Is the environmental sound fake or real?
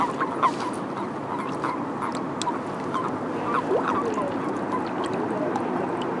real